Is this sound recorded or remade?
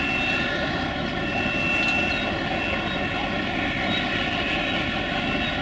recorded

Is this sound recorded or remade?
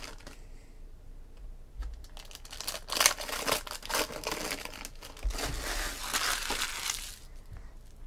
recorded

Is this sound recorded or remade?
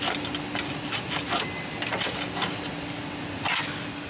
recorded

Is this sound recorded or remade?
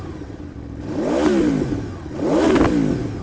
recorded